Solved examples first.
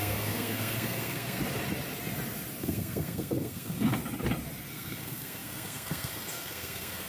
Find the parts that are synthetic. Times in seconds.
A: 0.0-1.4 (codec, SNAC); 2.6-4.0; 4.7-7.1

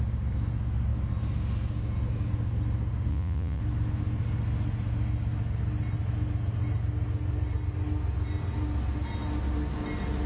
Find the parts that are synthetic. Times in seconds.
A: 3.1-3.6 (vocoder, Vocos)

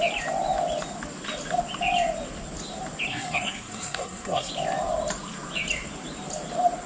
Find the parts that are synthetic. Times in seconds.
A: 3.1-4.5 (codec, SNAC)

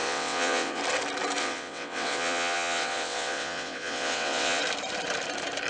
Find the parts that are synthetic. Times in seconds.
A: 0.0-0.8 (vocoder, WaveNeXt); 1.4-4.6